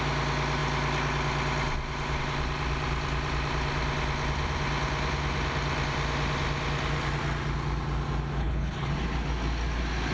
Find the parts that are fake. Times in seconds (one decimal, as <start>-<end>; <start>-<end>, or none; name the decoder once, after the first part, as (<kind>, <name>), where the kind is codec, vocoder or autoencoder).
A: 8.4-8.9 (codec, HILCodec)